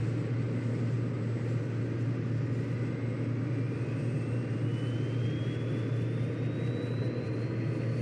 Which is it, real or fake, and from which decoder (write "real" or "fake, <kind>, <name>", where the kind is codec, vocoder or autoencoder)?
real